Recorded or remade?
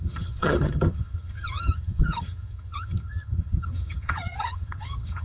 remade